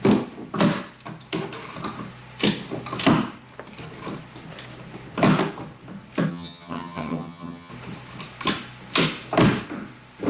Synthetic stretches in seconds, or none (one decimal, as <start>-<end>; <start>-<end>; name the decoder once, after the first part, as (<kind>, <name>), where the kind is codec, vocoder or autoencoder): 6.3-7.7 (vocoder, HiFi-GAN)